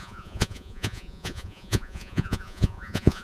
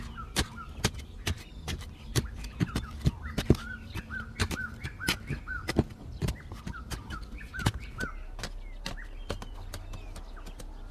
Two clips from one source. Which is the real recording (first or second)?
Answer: second